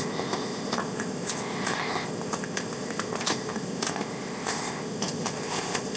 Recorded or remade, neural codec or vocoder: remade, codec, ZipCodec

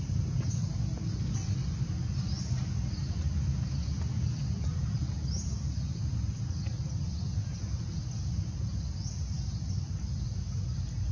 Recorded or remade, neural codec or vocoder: recorded